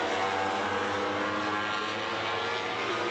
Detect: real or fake real